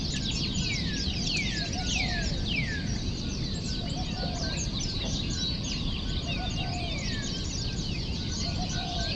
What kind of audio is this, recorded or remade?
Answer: recorded